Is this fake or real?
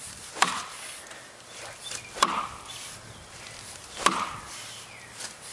fake